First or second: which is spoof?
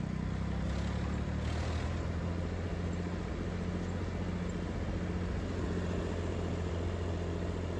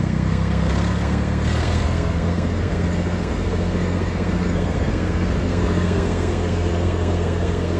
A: second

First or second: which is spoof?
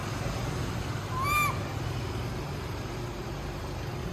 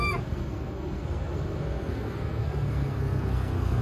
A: second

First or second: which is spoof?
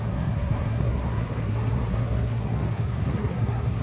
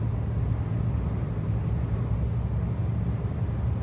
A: first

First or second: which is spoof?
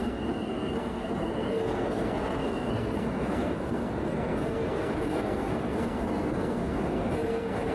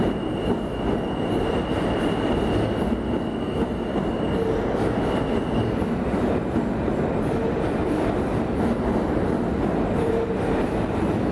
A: first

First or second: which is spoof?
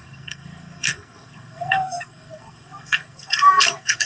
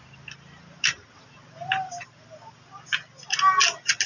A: first